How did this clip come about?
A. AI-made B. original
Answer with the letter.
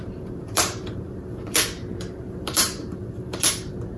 A